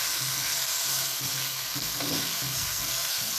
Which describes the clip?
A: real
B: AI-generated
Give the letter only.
B